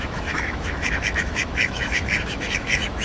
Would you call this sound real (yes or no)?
no